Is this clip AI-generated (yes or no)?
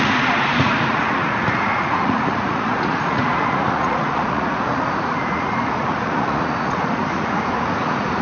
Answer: yes